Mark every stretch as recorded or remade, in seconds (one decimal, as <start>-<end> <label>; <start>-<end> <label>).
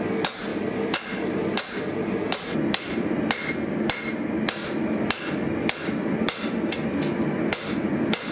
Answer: 0.0-0.5 recorded; 0.5-3.2 remade; 3.2-4.6 recorded; 4.6-6.4 remade; 6.4-8.3 recorded